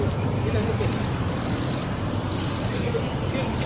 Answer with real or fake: real